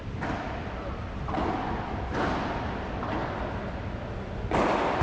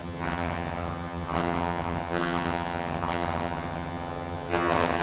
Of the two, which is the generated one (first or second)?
second